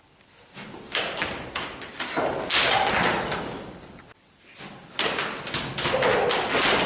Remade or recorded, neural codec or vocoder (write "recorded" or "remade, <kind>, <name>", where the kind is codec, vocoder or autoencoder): recorded